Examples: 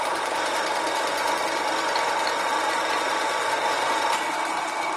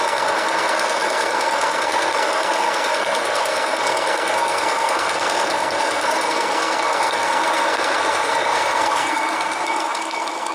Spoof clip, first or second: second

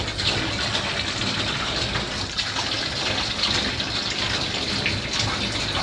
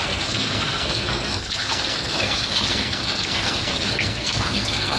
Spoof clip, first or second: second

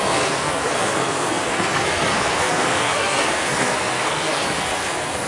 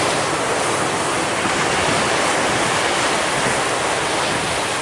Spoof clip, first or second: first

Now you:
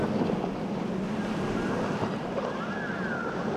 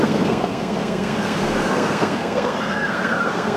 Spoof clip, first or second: second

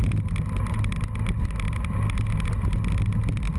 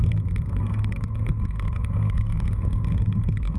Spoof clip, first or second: second